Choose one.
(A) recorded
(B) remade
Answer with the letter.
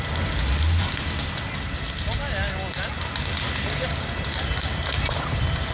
A